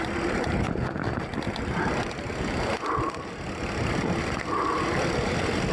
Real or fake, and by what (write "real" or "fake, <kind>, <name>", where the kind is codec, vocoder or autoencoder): real